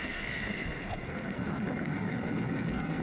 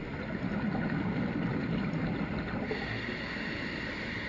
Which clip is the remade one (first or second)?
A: first